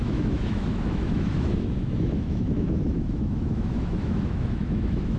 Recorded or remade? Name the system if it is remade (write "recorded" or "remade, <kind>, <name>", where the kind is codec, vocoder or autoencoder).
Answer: remade, autoencoder, DAC-VAE